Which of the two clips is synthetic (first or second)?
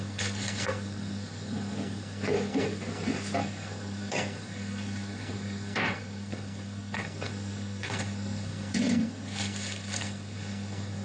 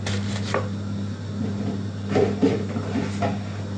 first